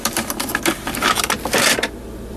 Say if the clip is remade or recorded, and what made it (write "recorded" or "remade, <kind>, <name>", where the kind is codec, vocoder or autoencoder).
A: remade, vocoder, BigVGAN v2